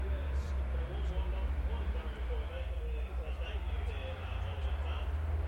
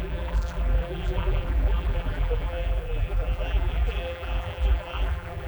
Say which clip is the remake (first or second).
second